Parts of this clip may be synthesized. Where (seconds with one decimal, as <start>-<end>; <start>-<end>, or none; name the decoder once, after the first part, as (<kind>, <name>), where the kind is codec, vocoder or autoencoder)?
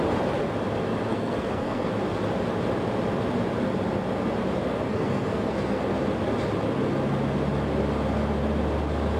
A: 1.1-1.9 (codec, SNAC); 4.9-5.8